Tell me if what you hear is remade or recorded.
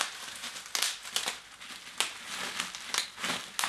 recorded